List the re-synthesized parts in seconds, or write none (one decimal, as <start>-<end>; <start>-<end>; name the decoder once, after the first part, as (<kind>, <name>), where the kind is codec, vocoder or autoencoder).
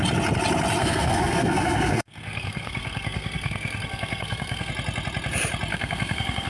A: 0.8-4.7 (codec, SNAC); 5.7-6.5